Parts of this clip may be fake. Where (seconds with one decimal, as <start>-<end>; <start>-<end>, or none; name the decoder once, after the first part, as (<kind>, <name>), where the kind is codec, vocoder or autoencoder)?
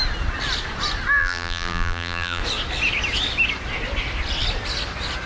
1.2-2.4 (vocoder, BigVGAN v2)